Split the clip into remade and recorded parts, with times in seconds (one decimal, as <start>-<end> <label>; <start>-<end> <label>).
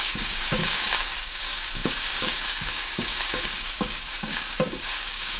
0.0-5.4 remade